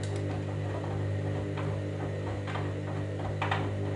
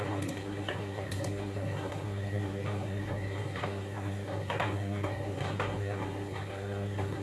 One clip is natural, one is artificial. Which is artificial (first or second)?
second